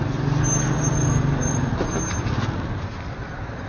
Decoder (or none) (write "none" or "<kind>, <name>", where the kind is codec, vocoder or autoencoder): none